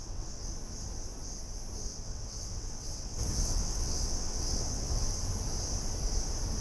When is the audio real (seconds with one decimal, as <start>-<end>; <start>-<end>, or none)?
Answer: 0.5-1.9; 5.1-6.6